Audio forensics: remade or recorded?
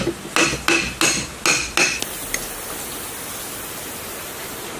recorded